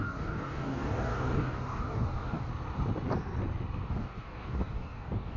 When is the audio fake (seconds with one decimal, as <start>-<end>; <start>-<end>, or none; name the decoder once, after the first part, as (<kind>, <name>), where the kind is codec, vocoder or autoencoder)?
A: 0.0-2.5 (codec, DAC); 3.9-5.4

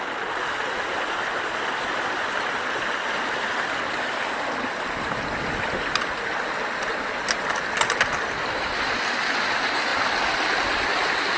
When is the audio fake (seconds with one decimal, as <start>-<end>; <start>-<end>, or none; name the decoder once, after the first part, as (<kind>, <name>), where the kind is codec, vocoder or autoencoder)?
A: none

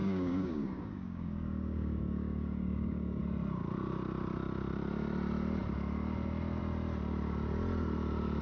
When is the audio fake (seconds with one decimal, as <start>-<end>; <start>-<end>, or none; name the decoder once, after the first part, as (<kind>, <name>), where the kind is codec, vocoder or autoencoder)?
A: 0.0-3.2 (codec, DAC)